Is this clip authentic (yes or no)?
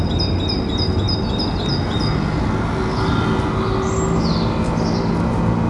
yes